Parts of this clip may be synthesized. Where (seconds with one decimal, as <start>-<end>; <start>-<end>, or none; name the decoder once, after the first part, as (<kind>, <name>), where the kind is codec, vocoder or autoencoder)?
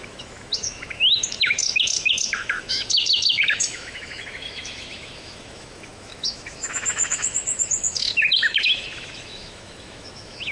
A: 0.0-10.5 (autoencoder, DAC-VAE)